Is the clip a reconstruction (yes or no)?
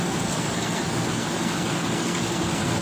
yes